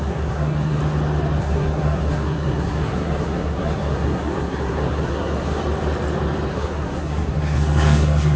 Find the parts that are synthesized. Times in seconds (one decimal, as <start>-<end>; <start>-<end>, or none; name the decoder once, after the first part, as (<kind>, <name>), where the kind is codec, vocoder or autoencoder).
0.0-0.8 (codec, SNAC); 1.4-5.6; 6.5-8.4